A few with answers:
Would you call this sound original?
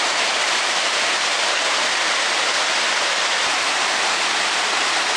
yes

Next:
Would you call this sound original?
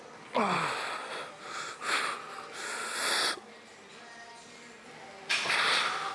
yes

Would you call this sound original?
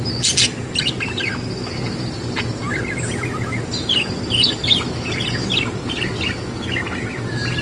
yes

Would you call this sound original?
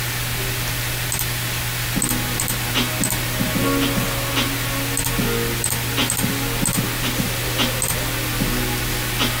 yes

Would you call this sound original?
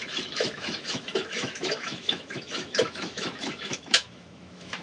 no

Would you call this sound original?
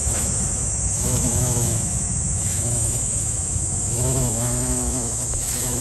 no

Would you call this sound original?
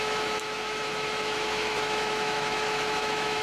no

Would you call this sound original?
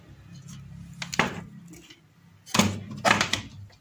yes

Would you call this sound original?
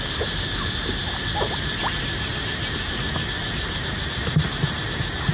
yes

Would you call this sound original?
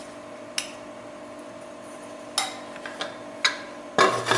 yes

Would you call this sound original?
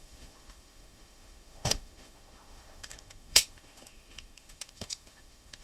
no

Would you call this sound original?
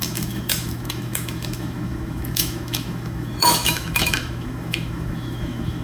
no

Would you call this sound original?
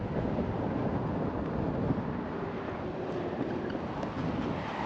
yes